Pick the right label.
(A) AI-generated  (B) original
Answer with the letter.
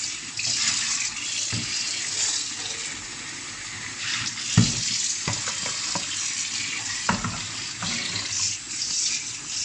B